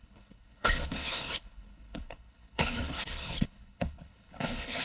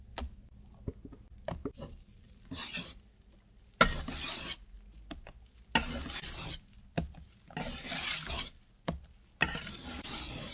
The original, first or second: second